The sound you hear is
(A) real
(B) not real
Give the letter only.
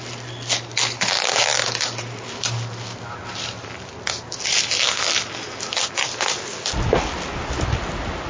A